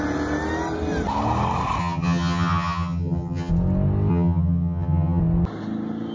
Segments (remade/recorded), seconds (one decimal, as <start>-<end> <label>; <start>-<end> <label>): 0.0-1.8 recorded; 1.8-3.5 remade; 3.5-4.1 recorded; 4.1-5.2 remade; 5.2-6.1 recorded